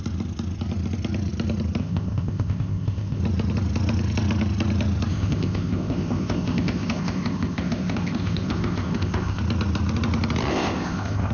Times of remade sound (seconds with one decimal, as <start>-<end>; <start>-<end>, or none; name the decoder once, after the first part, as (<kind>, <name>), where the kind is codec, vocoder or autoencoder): 1.8-3.2 (codec, ZipCodec); 5.1-9.4; 10.5-11.3